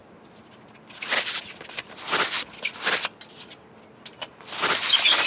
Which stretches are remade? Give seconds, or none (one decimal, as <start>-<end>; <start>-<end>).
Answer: none